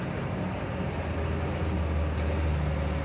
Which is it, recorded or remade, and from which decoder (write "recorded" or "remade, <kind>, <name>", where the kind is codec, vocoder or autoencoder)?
recorded